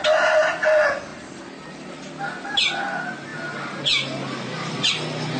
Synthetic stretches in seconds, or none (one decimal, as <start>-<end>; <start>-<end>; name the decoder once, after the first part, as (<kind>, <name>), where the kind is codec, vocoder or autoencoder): none